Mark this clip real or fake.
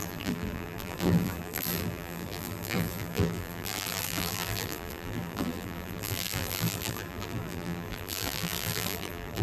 fake